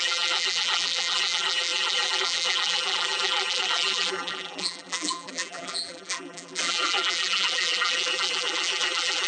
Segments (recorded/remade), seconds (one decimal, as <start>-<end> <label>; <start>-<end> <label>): 0.0-9.3 remade